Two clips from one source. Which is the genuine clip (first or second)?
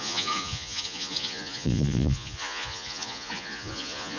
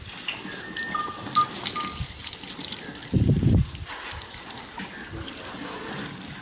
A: second